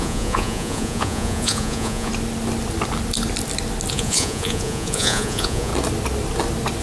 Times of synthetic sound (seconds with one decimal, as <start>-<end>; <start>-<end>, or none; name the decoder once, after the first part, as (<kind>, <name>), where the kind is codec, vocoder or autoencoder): 0.0-2.1 (vocoder, Vocos); 3.9-5.7